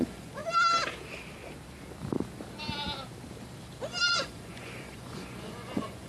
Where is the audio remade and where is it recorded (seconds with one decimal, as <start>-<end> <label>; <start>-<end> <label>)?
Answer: 0.0-0.4 remade; 0.4-4.1 recorded; 4.1-6.1 remade